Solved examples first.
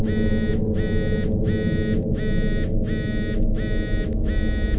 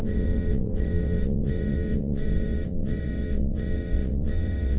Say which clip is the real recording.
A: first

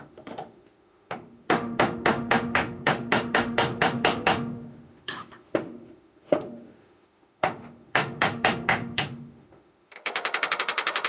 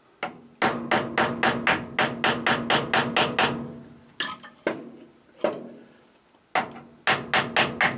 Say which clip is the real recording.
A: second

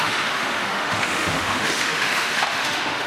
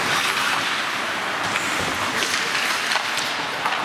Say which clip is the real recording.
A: second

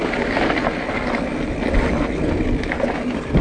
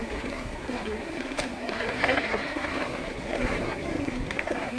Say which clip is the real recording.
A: first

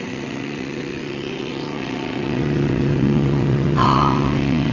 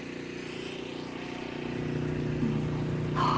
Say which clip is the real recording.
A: second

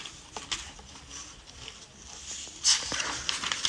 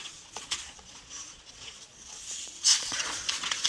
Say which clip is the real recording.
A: first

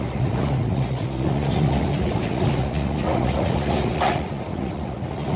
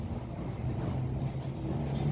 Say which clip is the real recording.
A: second